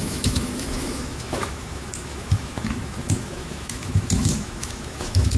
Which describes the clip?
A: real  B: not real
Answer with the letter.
B